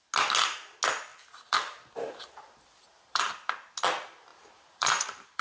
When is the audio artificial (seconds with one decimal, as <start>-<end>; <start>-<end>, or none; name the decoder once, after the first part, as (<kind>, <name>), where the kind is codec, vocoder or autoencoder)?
1.1-3.3 (vocoder, BigVGAN v2); 4.3-5.4